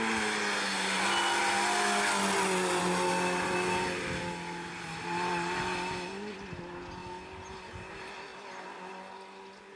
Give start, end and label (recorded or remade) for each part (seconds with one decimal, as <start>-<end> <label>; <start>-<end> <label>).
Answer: 0.0-9.8 recorded